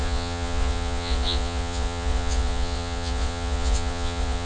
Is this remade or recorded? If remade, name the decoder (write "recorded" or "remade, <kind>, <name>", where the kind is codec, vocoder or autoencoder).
remade, vocoder, Vocos